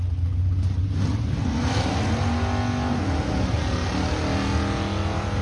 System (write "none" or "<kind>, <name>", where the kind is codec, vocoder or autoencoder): none